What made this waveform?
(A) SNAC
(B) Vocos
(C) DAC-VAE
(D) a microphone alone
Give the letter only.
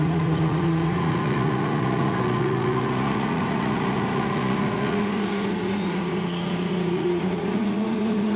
B